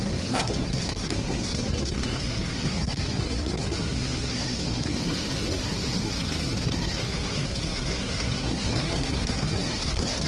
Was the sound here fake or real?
fake